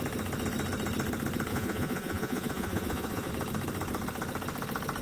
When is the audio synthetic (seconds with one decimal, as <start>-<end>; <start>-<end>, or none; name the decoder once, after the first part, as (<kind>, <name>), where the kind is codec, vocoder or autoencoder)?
1.5-3.3 (vocoder, Vocos)